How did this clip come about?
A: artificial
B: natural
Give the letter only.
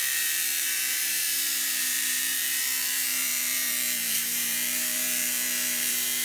A